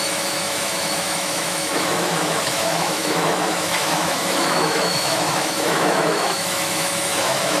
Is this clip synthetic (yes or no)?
yes